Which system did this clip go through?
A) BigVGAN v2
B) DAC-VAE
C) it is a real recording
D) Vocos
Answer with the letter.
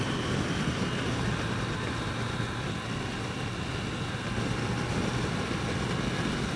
C